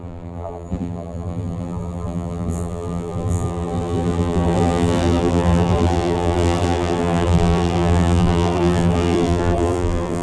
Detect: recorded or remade remade